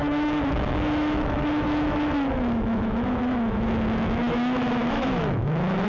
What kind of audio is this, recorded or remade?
remade